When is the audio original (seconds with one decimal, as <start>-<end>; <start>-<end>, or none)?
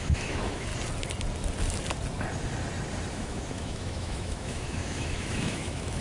0.7-3.1